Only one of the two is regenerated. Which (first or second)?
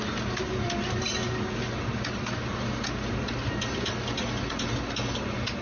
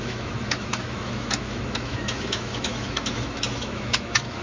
second